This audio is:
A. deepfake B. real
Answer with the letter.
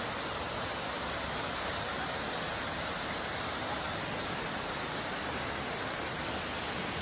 B